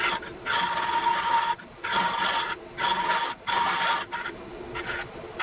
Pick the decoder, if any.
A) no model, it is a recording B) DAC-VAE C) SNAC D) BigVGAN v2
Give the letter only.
A